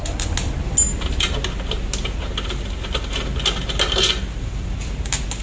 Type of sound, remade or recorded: recorded